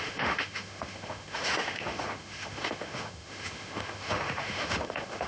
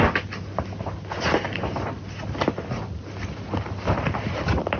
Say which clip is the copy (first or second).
first